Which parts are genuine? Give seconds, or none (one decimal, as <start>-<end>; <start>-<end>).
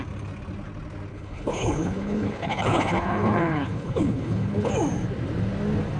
0.0-1.1; 4.7-6.0